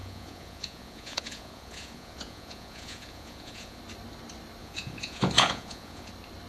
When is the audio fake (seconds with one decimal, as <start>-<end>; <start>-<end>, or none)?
0.0-3.8; 4.6-6.1